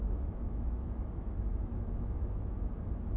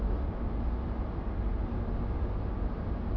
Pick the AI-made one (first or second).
first